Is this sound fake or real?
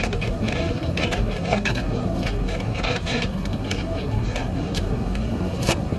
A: fake